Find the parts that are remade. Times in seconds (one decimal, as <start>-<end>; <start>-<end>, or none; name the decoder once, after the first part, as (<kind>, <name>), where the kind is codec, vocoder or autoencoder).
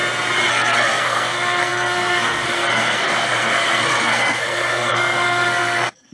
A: 0.5-6.1 (codec, SNAC)